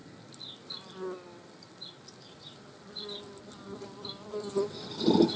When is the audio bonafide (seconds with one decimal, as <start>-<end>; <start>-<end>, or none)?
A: 0.0-5.4